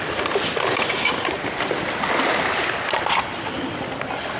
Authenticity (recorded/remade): recorded